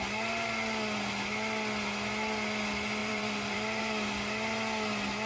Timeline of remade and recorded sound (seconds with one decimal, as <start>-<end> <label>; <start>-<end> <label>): 0.0-3.0 recorded; 3.0-3.8 remade; 3.8-5.3 recorded